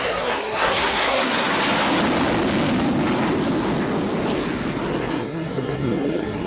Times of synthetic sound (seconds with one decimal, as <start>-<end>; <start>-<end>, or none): 0.0-1.5; 5.1-6.5